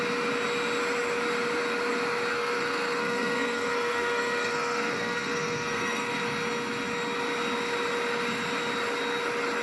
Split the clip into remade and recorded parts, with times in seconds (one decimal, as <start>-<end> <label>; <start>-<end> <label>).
0.0-2.3 recorded; 2.3-6.2 remade; 6.2-9.6 recorded